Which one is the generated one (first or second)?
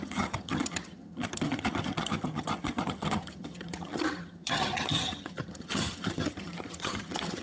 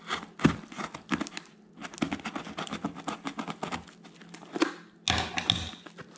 first